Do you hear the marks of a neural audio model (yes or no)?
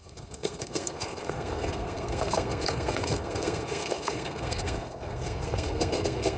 yes